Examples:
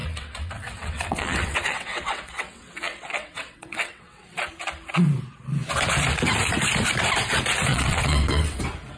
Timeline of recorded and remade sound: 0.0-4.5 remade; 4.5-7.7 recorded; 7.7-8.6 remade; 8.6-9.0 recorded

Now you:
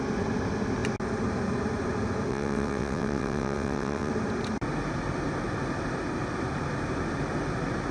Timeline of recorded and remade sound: 0.0-2.3 recorded; 2.3-4.1 remade; 4.1-7.9 recorded

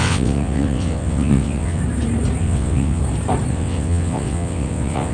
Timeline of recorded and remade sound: 0.0-1.8 remade; 1.8-2.4 recorded; 2.4-3.0 remade; 3.0-3.5 recorded; 3.5-5.1 remade

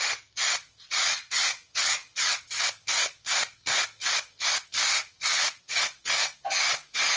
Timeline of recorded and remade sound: 0.0-0.8 recorded; 0.8-2.4 remade; 2.4-5.3 recorded; 5.3-5.8 remade; 5.8-7.2 recorded

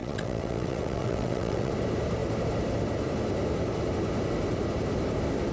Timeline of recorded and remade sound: 0.0-1.7 remade; 1.7-5.5 recorded

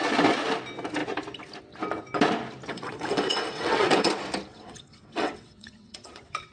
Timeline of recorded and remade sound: 0.0-2.7 recorded; 2.7-4.1 remade; 4.1-4.5 recorded; 4.5-6.5 remade

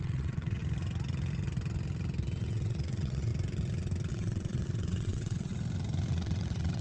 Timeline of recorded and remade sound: 0.0-0.6 remade; 0.6-2.4 recorded; 2.4-3.3 remade; 3.3-4.1 recorded; 4.1-5.5 remade; 5.5-6.1 recorded; 6.1-6.8 remade

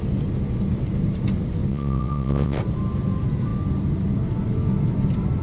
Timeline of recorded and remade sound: 0.0-1.7 recorded; 1.7-2.6 remade; 2.6-5.4 recorded